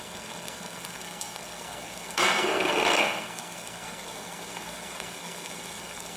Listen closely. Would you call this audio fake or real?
fake